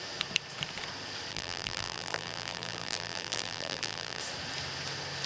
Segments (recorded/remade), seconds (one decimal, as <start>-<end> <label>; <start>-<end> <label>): 0.0-1.3 recorded; 1.3-4.2 remade; 4.2-5.3 recorded